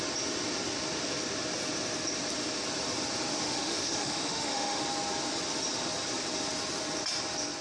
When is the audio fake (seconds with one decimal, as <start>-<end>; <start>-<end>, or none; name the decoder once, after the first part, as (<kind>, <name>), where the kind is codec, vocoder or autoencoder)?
3.3-4.8 (autoencoder, DAC-VAE)